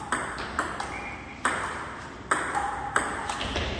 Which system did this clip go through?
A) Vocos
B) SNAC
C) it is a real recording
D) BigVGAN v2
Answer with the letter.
C